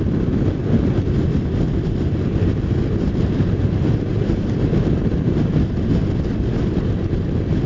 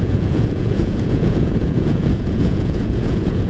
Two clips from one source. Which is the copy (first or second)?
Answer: second